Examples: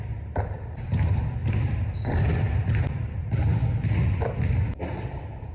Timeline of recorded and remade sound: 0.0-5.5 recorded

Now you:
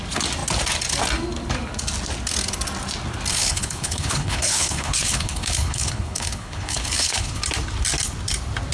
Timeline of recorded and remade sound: 0.0-3.3 recorded; 3.3-7.4 remade; 7.4-8.7 recorded

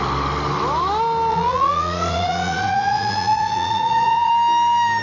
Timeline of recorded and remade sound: 0.0-1.3 recorded; 1.3-4.3 remade; 4.3-5.0 recorded

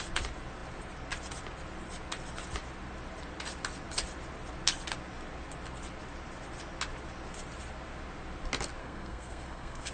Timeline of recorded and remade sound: 0.0-8.8 recorded; 8.8-9.9 remade

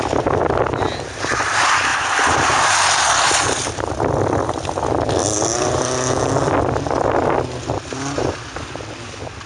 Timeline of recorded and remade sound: 0.0-1.9 recorded; 1.9-2.9 remade; 2.9-5.2 recorded; 5.2-5.8 remade; 5.8-9.5 recorded